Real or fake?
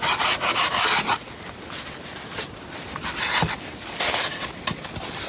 real